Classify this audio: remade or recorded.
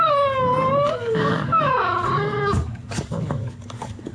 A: remade